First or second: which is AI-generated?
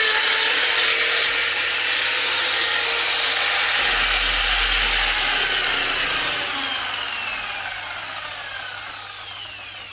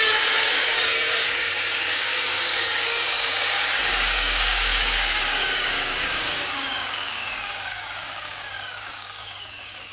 second